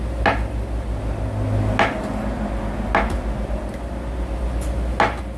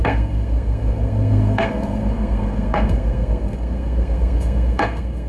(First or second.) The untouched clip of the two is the first